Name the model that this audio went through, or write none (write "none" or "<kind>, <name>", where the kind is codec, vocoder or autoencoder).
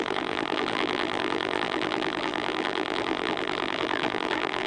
vocoder, BigVGAN v2